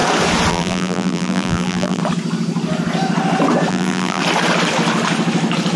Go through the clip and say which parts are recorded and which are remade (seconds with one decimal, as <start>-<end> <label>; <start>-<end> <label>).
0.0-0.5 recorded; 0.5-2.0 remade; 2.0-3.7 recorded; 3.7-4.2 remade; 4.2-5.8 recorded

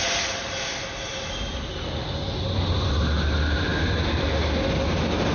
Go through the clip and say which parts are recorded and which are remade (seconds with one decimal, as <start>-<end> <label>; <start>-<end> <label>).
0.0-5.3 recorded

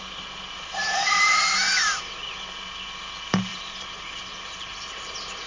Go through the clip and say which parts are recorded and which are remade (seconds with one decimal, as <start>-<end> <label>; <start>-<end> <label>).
0.0-0.8 recorded; 0.8-2.2 remade; 2.2-3.5 recorded; 3.5-5.5 remade

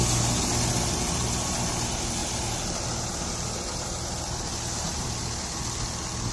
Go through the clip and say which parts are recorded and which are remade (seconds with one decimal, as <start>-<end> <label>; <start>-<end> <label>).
0.0-6.3 recorded

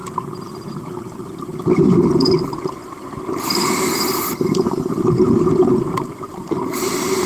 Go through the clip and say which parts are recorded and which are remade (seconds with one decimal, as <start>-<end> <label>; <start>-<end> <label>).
0.0-0.7 recorded; 0.7-7.3 remade

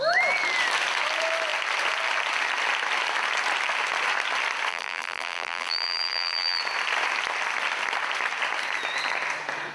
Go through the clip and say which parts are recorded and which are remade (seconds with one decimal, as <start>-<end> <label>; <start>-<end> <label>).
0.0-4.7 recorded; 4.7-6.6 remade; 6.6-9.7 recorded

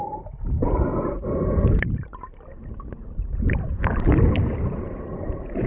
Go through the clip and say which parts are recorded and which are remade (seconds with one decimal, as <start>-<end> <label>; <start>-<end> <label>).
0.0-5.7 remade

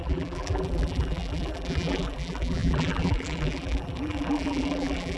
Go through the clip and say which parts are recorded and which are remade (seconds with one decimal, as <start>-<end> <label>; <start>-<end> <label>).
0.0-5.2 remade